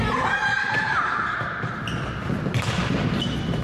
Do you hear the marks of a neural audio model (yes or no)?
no